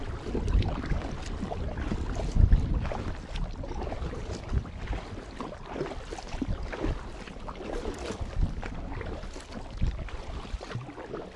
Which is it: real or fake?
real